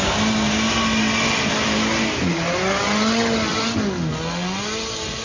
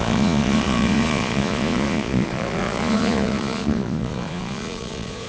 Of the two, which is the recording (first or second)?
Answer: first